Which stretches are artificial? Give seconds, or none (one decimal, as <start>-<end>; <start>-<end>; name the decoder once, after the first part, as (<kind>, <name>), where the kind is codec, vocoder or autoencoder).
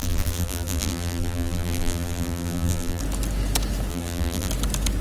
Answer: 0.0-3.0 (vocoder, BigVGAN v2); 3.9-4.5